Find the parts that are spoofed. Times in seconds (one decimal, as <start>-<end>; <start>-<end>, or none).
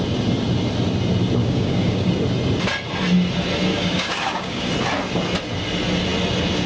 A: 1.4-2.1; 3.7-4.7